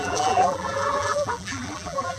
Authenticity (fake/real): fake